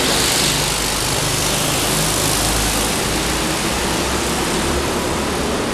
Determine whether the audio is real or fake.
real